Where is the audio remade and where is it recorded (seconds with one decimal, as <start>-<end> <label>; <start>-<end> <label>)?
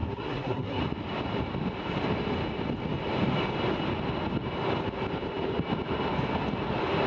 0.0-0.8 remade; 0.8-7.1 recorded